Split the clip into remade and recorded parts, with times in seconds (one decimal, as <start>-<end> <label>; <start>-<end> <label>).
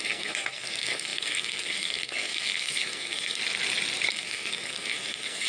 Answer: 0.0-3.4 remade; 3.4-4.1 recorded; 4.1-5.5 remade